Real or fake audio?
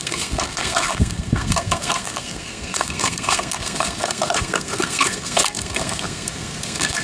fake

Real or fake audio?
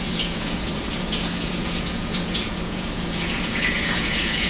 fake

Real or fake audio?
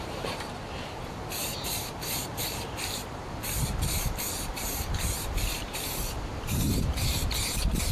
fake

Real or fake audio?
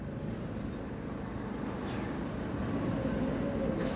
real